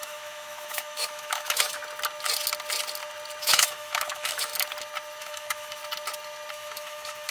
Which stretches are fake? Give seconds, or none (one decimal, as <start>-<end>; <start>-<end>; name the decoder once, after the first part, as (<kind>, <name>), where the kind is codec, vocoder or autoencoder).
0.0-1.8 (autoencoder, DAC-VAE); 3.4-4.5; 5.2-5.8; 6.5-7.3